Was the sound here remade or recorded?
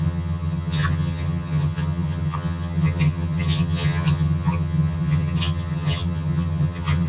remade